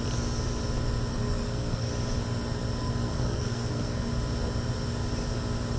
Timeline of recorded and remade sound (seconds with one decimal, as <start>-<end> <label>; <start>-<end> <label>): 0.0-1.1 recorded; 1.1-1.9 remade; 1.9-2.8 recorded; 2.8-4.1 remade; 4.1-5.8 recorded